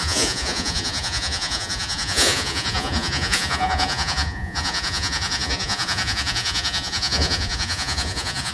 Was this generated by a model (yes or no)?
yes